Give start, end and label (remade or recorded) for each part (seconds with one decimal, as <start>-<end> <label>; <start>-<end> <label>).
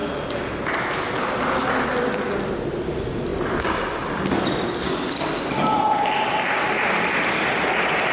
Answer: 0.0-8.1 recorded